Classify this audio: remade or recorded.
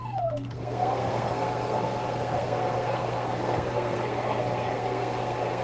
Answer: remade